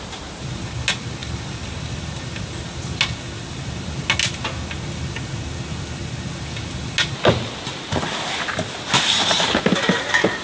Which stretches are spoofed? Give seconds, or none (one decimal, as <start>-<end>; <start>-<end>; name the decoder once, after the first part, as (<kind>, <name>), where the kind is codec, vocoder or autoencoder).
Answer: none